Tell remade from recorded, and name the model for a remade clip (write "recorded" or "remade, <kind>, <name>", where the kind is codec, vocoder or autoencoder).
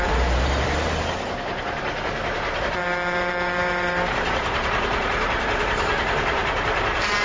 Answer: remade, vocoder, BigVGAN v2